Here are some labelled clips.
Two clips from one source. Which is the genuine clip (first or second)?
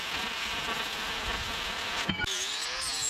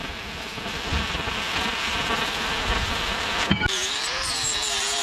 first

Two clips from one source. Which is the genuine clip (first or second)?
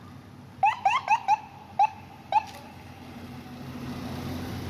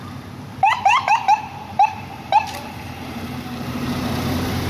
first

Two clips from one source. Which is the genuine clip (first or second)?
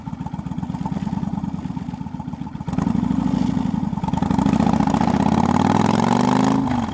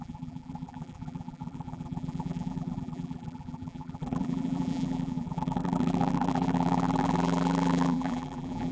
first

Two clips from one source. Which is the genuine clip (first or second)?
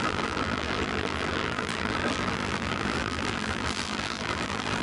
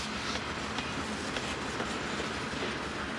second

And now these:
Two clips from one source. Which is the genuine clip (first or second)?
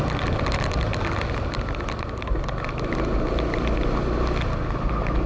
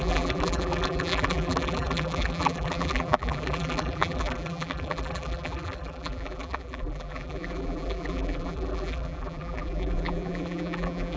first